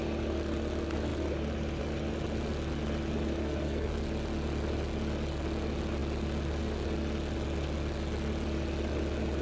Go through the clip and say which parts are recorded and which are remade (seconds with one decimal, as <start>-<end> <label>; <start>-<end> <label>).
0.0-3.4 recorded; 3.4-4.0 remade; 4.0-9.4 recorded